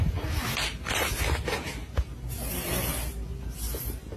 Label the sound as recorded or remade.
recorded